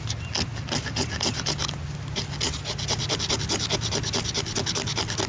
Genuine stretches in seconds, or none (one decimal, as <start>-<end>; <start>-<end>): 0.0-5.3